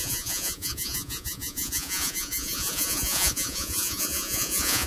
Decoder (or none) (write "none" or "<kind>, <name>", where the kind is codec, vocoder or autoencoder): vocoder, Vocos